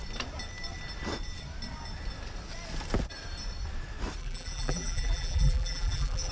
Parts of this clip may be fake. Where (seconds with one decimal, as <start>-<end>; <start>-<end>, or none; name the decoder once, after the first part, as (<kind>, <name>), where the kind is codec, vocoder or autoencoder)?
4.2-6.3 (vocoder, BigVGAN v2)